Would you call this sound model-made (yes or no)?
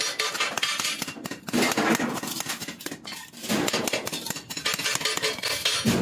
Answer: no